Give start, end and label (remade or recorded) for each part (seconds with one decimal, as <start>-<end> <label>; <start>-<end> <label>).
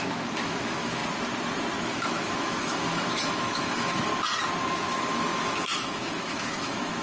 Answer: 0.0-1.0 remade; 1.0-1.8 recorded; 1.8-4.1 remade; 4.1-4.7 recorded; 4.7-7.0 remade